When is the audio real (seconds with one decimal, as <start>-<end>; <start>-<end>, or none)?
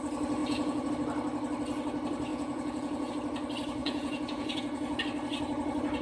0.0-0.4; 0.9-2.3; 3.1-3.8; 5.0-6.0